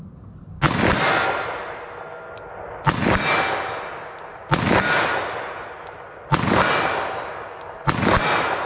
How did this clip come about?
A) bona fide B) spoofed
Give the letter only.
A